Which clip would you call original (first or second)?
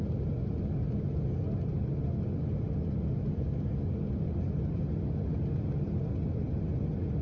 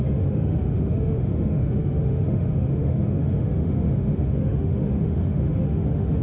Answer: first